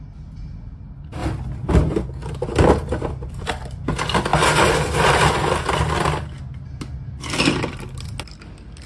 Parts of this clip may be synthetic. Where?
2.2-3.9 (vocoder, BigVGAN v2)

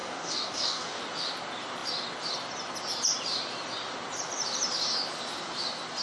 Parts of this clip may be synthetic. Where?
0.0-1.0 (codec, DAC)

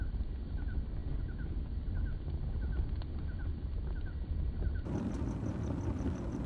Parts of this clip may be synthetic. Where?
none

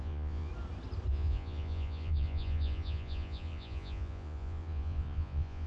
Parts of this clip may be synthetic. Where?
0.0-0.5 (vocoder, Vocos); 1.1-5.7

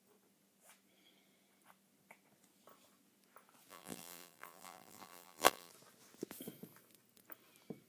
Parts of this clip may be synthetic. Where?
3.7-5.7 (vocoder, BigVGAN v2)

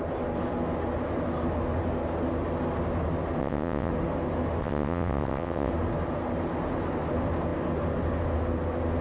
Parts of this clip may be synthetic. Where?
3.4-3.9 (vocoder, WaveNeXt); 4.6-5.7

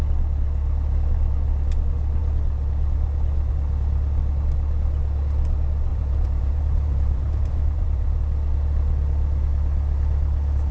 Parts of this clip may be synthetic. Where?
5.9-8.2 (vocoder, BigVGAN v2)

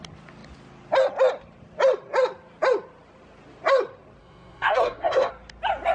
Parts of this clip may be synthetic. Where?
4.2-5.3 (codec, SNAC)